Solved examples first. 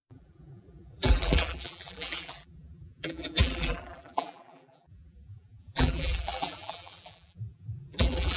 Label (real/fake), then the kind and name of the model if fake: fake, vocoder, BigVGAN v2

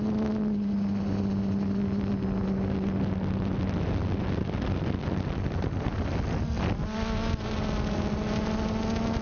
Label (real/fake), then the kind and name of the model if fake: real